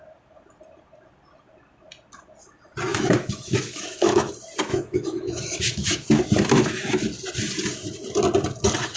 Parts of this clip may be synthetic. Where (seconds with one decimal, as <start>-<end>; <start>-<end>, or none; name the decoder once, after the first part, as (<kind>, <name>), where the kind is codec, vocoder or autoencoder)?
2.9-4.3 (autoencoder, DAC-VAE); 4.7-6.1